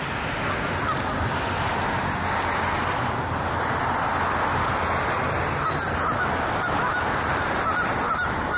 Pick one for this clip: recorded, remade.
recorded